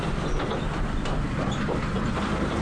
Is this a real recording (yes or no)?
yes